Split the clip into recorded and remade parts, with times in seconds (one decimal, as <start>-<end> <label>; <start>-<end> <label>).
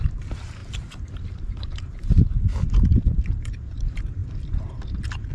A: 0.0-5.3 remade